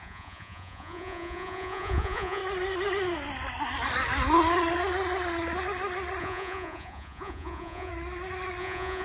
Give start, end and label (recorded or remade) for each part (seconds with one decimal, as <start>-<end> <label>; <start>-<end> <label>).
0.0-2.4 remade; 2.4-6.2 recorded; 6.2-7.9 remade; 7.9-8.6 recorded; 8.6-9.0 remade